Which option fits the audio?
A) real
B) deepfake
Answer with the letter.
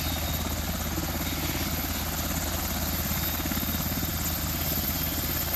A